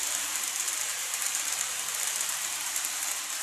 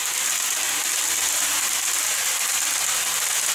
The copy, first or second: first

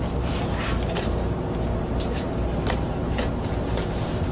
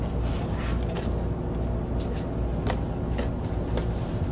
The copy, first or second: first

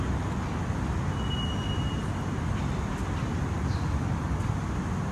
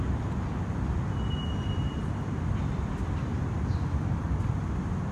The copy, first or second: second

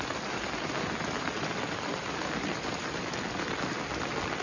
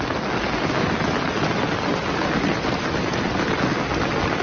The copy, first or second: first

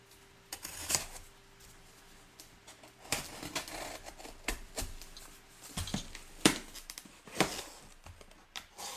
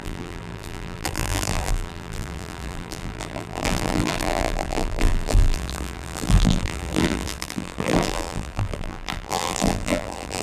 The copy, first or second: second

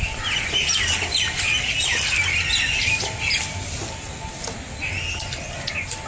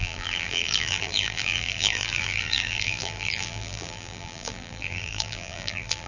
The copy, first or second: second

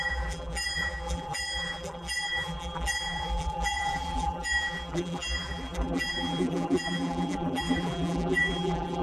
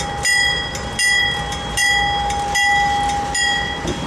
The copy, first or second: first